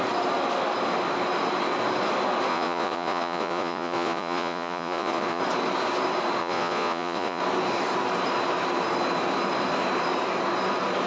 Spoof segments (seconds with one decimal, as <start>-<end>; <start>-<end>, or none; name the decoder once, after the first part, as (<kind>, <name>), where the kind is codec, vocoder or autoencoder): 2.5-5.4 (vocoder, Vocos); 6.4-7.4